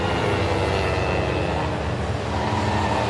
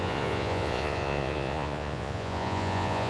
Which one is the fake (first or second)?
second